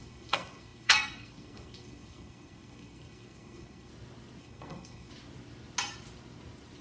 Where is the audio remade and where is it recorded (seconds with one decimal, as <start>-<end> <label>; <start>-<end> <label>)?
0.0-3.9 remade; 3.9-4.4 recorded; 4.4-5.1 remade; 5.1-6.8 recorded